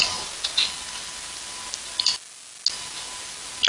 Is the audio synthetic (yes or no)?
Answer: no